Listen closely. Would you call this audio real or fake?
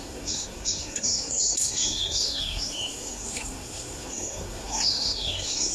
fake